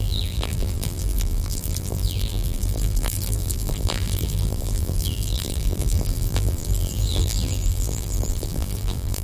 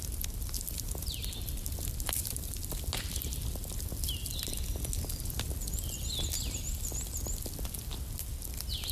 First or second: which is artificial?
first